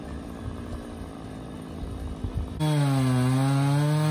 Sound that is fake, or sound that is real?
real